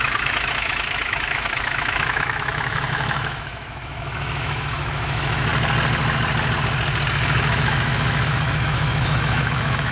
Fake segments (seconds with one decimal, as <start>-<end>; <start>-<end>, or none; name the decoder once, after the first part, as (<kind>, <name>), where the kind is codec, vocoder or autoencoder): 0.0-5.5 (autoencoder, DAC-VAE); 7.1-9.9

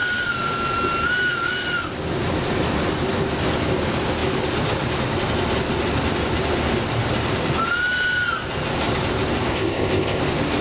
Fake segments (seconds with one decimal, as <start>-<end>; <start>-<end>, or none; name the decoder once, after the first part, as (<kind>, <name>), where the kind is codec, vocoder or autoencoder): 9.5-10.2 (codec, ZipCodec)

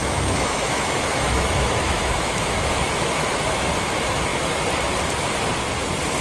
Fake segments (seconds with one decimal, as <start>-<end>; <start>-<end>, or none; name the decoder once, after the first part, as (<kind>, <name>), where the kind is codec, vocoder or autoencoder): 0.0-3.7 (autoencoder, DAC-VAE)

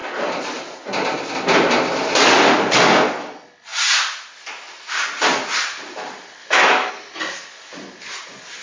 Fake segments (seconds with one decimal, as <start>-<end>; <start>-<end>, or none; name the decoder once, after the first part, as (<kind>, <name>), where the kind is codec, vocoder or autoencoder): 6.4-6.9 (autoencoder, DAC-VAE)

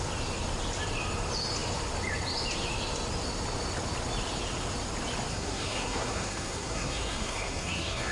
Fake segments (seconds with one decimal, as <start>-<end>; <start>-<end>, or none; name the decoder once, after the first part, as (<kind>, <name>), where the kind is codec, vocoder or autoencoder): 5.3-8.1 (codec, SNAC)

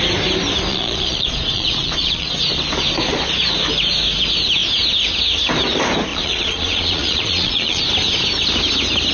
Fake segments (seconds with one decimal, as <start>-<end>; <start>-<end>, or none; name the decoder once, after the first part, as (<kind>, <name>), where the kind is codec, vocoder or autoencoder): 0.7-2.3 (vocoder, Vocos); 6.1-7.8

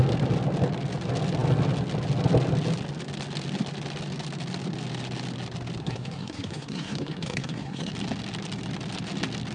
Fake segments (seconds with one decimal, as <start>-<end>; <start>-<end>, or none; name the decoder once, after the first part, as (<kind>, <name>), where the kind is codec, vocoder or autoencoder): 5.8-7.9 (codec, SNAC)

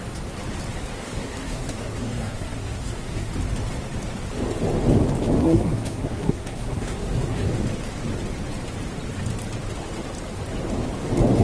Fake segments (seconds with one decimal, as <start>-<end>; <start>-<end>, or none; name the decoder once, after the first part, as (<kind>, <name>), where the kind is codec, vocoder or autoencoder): 1.0-3.3 (codec, SNAC); 5.4-7.5